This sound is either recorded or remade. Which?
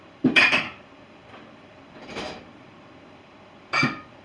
remade